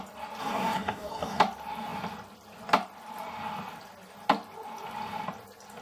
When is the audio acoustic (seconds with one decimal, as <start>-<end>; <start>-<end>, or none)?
0.0-0.4; 1.4-5.8